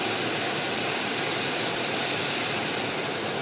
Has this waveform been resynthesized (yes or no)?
no